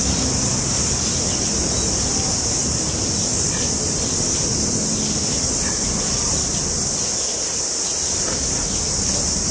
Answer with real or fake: fake